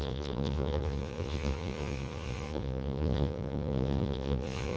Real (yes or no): no